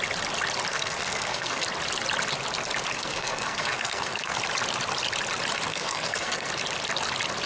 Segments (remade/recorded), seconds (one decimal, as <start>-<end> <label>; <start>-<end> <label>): 0.0-0.7 recorded; 0.7-1.6 remade; 1.6-3.0 recorded; 3.0-4.4 remade; 4.4-5.7 recorded; 5.7-6.5 remade; 6.5-7.5 recorded